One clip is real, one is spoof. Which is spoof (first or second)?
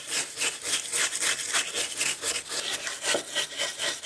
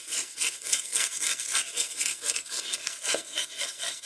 second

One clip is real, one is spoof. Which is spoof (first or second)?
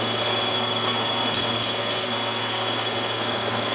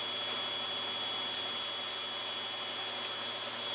first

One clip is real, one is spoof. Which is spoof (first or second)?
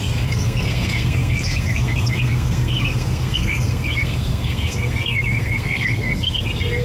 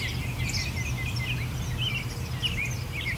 first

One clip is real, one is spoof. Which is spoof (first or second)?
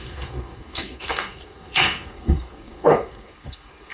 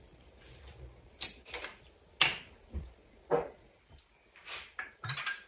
first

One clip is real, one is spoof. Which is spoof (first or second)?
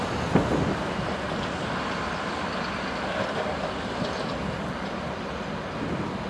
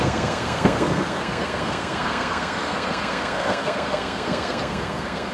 second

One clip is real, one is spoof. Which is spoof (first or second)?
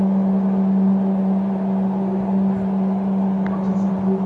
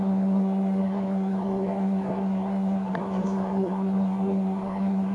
second